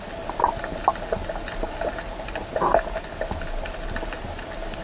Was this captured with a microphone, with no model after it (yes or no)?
yes